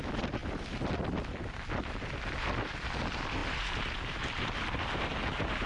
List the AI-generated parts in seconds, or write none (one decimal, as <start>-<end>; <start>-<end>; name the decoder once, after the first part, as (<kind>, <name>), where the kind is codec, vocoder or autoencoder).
3.4-5.7 (vocoder, BigVGAN v2)